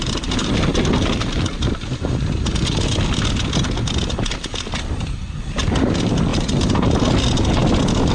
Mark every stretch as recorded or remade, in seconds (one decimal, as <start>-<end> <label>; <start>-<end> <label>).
0.0-8.1 recorded